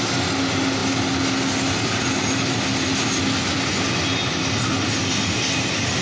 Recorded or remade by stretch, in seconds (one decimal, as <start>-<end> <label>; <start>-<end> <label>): 0.0-6.0 recorded